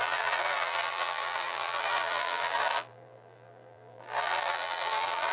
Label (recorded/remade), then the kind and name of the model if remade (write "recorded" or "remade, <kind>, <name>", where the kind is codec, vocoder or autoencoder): remade, vocoder, BigVGAN v2